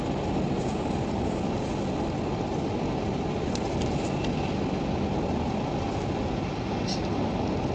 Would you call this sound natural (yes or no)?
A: yes